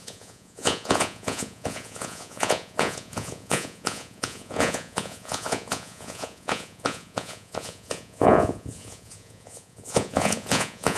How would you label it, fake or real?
fake